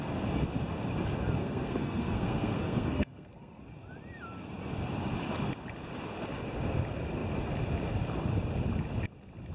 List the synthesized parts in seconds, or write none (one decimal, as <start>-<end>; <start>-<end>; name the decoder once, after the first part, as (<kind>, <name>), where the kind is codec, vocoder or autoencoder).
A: 1.4-3.6 (codec, SNAC)